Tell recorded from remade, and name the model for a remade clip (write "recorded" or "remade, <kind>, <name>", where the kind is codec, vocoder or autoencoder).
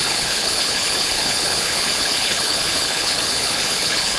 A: remade, codec, HILCodec